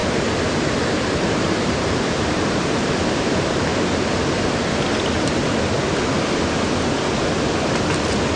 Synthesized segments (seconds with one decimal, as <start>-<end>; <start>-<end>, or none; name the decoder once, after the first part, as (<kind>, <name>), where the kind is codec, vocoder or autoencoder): 0.0-3.7 (vocoder, BigVGAN v2)